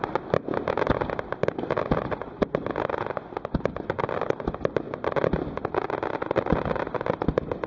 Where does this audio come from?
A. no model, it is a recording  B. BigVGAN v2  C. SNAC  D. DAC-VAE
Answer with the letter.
A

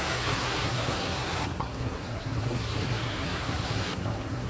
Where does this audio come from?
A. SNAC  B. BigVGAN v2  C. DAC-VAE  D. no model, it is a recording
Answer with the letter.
A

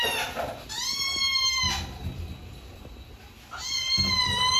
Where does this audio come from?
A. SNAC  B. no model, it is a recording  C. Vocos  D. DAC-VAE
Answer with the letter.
B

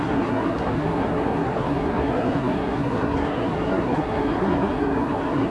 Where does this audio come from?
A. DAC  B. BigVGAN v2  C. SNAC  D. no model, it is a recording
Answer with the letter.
C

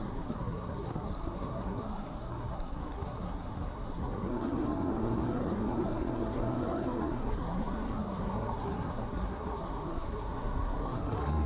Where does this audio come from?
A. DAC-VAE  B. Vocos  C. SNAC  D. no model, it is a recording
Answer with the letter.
C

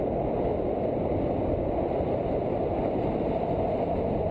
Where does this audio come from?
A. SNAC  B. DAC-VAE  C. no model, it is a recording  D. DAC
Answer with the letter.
C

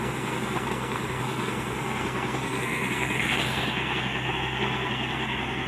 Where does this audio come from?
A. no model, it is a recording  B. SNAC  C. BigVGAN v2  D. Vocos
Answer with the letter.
B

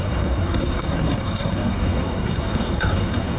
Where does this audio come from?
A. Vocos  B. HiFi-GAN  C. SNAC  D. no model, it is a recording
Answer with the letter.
C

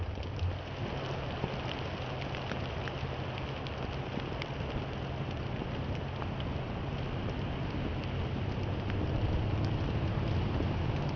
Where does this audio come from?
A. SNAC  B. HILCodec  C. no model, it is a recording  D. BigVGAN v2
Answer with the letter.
C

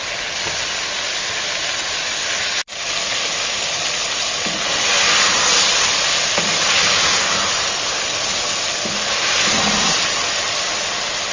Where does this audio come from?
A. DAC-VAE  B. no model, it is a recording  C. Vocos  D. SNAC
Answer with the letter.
B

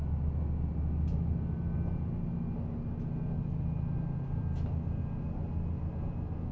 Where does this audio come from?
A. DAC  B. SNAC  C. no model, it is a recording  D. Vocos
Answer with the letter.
C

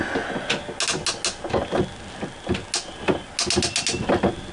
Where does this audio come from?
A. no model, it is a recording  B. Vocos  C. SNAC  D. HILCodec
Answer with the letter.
A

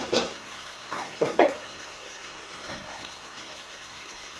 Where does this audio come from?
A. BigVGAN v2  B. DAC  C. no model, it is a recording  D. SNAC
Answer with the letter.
D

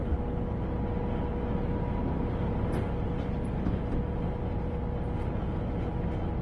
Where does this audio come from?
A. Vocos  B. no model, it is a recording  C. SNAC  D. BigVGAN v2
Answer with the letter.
B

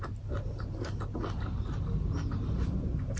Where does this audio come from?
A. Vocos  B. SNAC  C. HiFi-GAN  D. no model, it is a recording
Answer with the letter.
D